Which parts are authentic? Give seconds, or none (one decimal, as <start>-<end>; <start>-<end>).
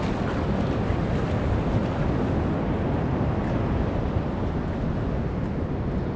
0.0-6.2